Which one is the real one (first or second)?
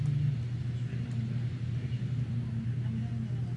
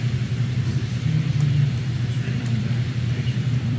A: first